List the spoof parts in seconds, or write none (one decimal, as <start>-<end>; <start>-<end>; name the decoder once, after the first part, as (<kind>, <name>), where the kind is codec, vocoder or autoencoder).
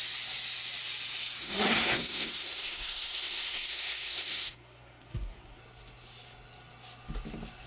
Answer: 1.4-5.6 (codec, SNAC)